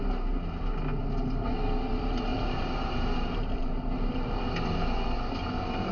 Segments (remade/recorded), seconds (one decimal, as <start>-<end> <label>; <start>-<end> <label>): 0.0-2.3 recorded; 2.3-4.4 remade; 4.4-5.9 recorded